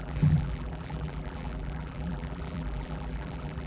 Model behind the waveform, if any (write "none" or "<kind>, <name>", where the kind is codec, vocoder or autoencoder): vocoder, BigVGAN v2